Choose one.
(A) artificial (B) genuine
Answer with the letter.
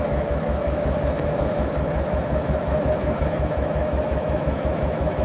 A